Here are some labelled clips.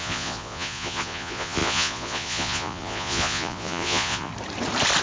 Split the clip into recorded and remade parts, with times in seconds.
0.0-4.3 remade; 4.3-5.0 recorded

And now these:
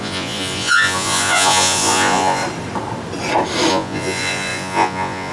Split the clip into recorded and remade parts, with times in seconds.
0.0-2.4 remade; 2.4-3.7 recorded; 3.7-5.3 remade

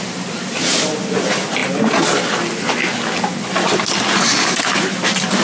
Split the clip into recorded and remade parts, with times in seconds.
0.0-5.4 recorded

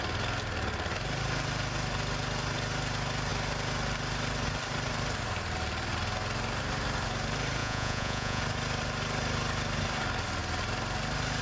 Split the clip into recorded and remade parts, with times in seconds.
0.0-7.6 recorded; 7.6-8.4 remade; 8.4-11.4 recorded

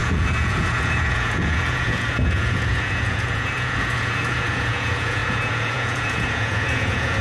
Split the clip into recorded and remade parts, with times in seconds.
0.0-7.2 remade